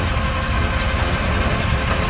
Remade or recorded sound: recorded